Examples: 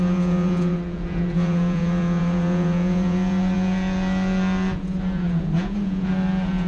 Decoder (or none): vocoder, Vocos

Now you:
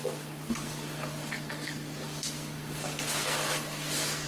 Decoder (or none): codec, SNAC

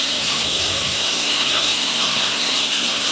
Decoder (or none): codec, SNAC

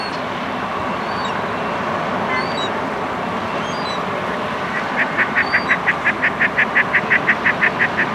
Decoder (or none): none